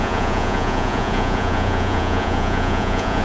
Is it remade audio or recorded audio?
remade